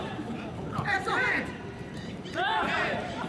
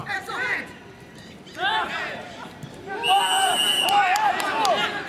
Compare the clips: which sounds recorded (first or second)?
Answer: second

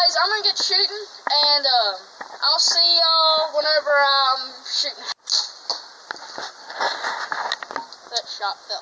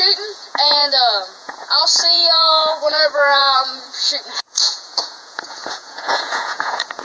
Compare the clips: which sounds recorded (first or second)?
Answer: first